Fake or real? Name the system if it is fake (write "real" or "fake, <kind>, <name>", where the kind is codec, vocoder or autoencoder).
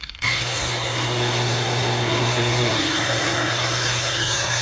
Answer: fake, codec, SNAC